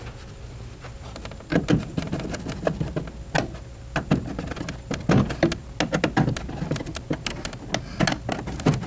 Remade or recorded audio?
recorded